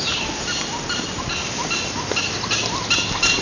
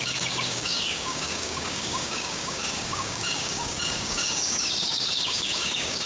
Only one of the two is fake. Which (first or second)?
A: second